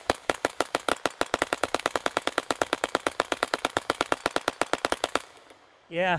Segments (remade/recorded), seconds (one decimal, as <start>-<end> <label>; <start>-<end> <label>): 0.0-0.9 remade; 0.9-1.4 recorded; 1.4-4.2 remade; 4.2-4.9 recorded; 4.9-6.2 remade